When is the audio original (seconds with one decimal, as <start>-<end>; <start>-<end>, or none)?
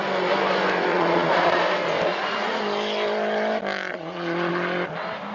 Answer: 0.0-0.9; 1.6-2.1; 2.6-3.9; 4.5-5.3